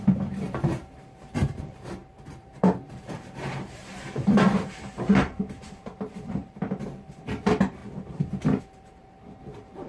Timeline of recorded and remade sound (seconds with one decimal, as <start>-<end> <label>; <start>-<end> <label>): 0.0-7.8 remade; 7.8-8.6 recorded; 8.6-9.9 remade

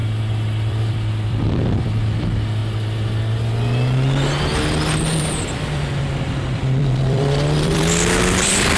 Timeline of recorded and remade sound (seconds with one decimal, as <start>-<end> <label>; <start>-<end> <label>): 0.0-2.6 remade; 2.6-5.1 recorded; 5.1-8.8 remade

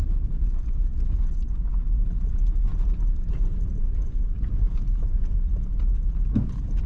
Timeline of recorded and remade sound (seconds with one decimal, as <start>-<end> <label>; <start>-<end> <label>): 0.0-1.2 remade; 1.2-2.7 recorded; 2.7-6.9 remade

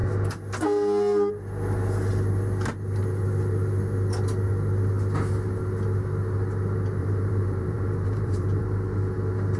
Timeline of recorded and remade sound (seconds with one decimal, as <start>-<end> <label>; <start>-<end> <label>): 0.0-7.0 recorded; 7.0-8.6 remade; 8.6-9.6 recorded

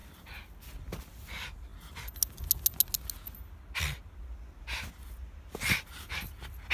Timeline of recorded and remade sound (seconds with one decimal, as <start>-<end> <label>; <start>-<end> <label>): 0.0-6.7 recorded

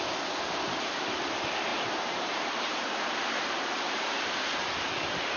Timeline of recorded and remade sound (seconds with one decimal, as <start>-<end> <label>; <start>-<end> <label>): 0.0-1.7 recorded; 1.7-4.9 remade; 4.9-5.4 recorded